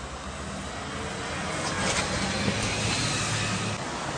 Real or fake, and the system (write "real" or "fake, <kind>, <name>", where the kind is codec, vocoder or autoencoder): real